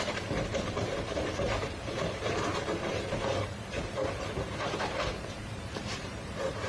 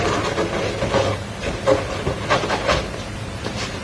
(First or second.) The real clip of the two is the second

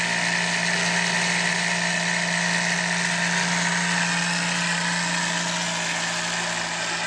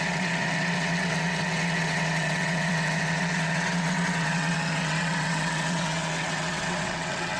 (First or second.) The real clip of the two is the first